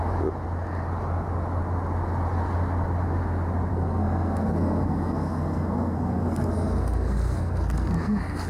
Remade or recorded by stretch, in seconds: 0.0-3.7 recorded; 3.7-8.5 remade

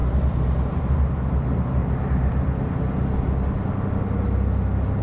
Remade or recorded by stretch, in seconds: 0.0-3.0 remade; 3.0-5.0 recorded

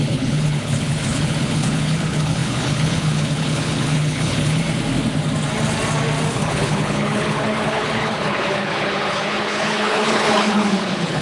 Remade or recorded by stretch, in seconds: 0.0-4.6 remade; 4.6-6.3 recorded; 6.3-11.2 remade

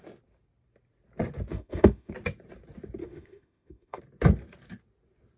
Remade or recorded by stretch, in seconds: 0.0-1.5 recorded; 1.5-2.1 remade; 2.1-3.0 recorded; 3.0-4.0 remade; 4.0-5.4 recorded

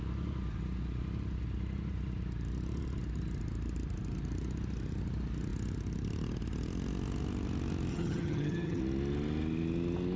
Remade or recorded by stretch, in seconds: 0.0-7.9 recorded; 7.9-8.8 remade; 8.8-10.2 recorded